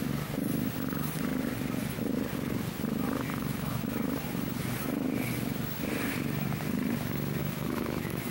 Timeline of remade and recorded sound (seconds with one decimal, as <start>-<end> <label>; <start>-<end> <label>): 0.0-3.3 recorded; 3.3-3.8 remade; 3.8-7.4 recorded; 7.4-8.3 remade